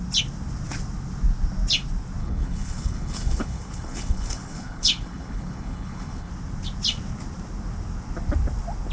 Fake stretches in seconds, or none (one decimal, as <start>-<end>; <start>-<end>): 2.2-6.3